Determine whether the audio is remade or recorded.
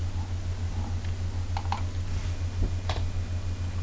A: recorded